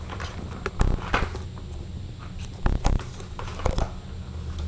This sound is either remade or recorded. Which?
recorded